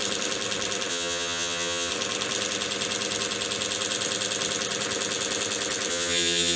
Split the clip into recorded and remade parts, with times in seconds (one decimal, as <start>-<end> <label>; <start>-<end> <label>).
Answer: 0.0-0.9 recorded; 0.9-1.9 remade; 1.9-5.9 recorded; 5.9-6.6 remade